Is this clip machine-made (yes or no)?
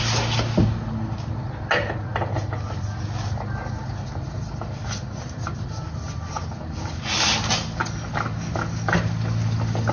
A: no